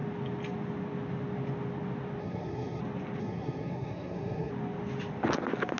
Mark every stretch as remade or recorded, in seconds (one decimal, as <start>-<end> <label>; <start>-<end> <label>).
0.0-2.2 recorded; 2.2-2.8 remade; 2.8-3.2 recorded; 3.2-4.5 remade; 4.5-5.8 recorded